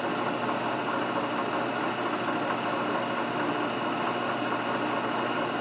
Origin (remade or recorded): recorded